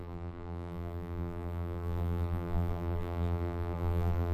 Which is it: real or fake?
fake